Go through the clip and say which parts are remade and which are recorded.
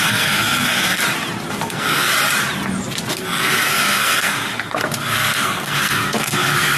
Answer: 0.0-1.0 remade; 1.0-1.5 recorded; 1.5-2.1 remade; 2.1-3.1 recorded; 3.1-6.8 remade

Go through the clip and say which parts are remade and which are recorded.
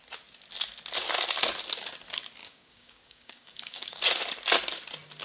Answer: 0.0-2.4 recorded; 2.4-4.0 remade; 4.0-5.2 recorded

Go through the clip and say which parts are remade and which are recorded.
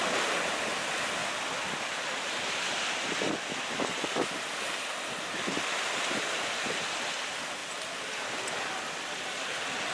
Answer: 0.0-9.9 recorded